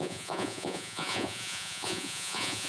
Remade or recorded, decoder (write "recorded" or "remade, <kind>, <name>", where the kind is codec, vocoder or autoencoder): remade, vocoder, Vocos